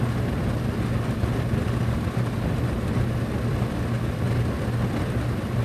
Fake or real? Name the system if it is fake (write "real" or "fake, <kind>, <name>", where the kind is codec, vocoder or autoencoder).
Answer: real